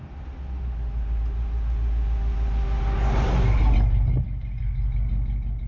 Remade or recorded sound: recorded